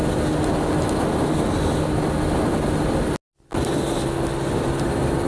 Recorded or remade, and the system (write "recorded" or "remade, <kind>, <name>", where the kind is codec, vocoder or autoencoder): recorded